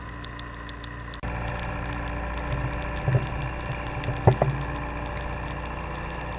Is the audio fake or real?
real